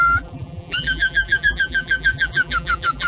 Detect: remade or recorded remade